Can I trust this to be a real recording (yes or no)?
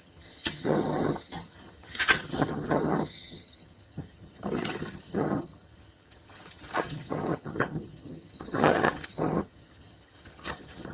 no